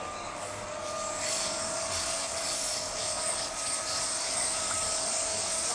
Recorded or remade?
remade